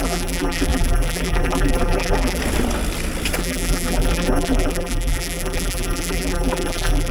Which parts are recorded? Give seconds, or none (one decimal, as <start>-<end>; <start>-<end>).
2.4-3.4

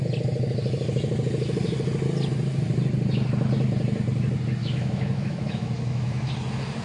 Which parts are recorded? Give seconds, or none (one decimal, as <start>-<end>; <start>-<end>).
0.0-4.6; 6.3-6.8

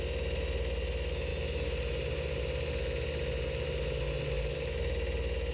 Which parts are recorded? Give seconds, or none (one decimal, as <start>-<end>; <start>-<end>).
0.0-5.5

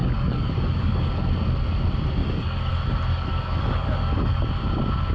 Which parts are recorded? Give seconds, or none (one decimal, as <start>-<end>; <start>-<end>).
1.0-2.2; 2.7-3.1; 4.5-5.1

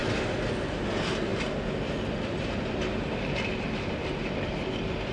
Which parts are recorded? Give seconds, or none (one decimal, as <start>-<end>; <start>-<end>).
0.0-5.1